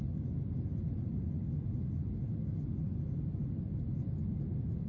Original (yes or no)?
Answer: yes